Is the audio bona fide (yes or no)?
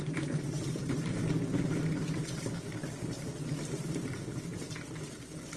no